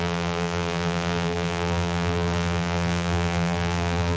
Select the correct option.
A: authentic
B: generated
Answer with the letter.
B